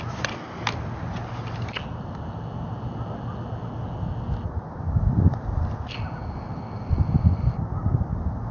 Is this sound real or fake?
real